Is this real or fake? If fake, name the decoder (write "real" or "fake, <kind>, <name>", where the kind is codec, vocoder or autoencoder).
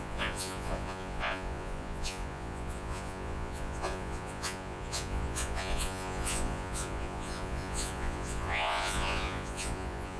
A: fake, vocoder, Vocos